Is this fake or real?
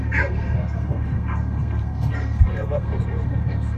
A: fake